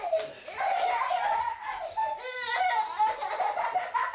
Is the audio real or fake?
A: real